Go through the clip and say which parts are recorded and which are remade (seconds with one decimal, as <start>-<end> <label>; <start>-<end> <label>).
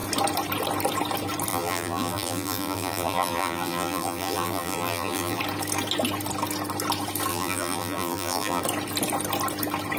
0.0-1.5 recorded; 1.5-5.4 remade; 5.4-7.3 recorded; 7.3-8.6 remade; 8.6-10.0 recorded